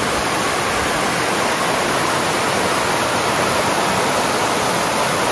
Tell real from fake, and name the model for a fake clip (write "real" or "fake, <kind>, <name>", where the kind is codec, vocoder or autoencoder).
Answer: real